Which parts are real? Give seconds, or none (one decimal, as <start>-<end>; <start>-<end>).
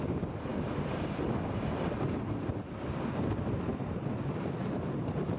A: 0.0-5.4